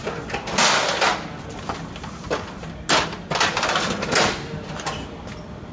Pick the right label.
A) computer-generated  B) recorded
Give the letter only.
B